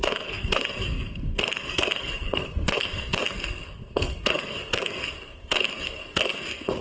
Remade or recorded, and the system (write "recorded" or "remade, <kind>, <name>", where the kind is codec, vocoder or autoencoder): remade, codec, SNAC